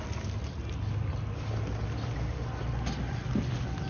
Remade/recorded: recorded